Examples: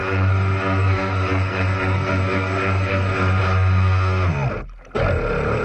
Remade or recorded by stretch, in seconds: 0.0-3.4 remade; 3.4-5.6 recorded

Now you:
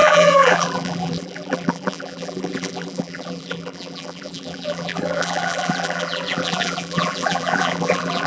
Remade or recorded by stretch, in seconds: 0.0-8.3 remade

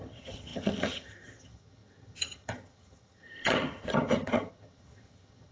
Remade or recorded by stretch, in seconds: 0.0-5.5 remade

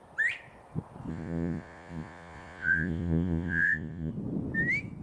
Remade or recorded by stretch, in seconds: 0.0-1.1 recorded; 1.1-4.1 remade; 4.1-5.0 recorded

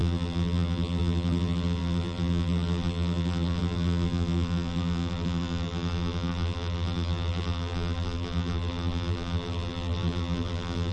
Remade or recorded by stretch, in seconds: 0.0-10.9 remade

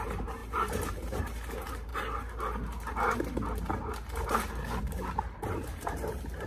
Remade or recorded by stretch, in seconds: 0.0-1.9 remade; 1.9-4.8 recorded; 4.8-6.5 remade